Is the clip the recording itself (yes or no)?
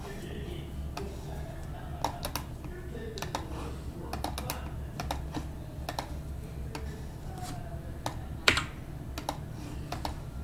yes